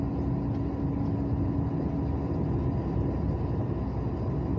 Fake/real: real